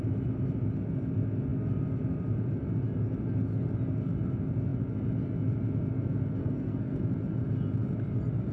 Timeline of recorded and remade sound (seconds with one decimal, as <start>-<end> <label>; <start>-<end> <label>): 0.0-6.4 recorded; 6.4-7.0 remade; 7.0-8.5 recorded